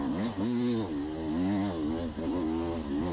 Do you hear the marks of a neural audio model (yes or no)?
no